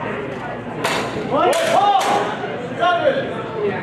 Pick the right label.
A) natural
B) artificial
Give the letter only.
A